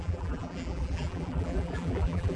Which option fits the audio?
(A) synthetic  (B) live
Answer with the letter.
A